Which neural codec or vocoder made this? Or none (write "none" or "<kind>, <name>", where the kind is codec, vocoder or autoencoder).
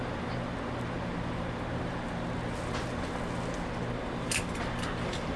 none